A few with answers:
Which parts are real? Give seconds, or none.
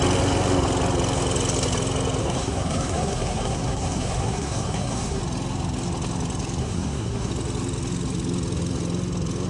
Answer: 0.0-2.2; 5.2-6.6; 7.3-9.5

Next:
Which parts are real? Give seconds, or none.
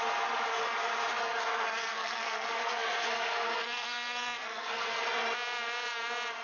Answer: 0.0-1.2; 5.0-6.4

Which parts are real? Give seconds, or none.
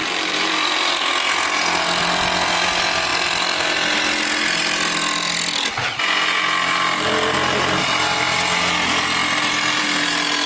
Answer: 1.1-10.5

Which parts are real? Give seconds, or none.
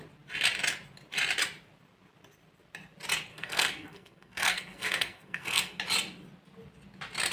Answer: 0.0-3.3; 5.8-7.3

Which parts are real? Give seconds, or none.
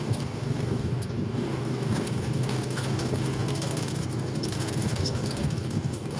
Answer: none